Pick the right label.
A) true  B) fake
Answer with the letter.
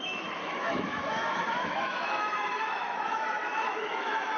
B